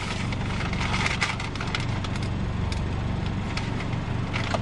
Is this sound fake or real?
real